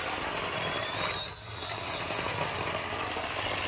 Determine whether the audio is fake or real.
real